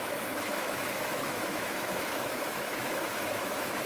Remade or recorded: remade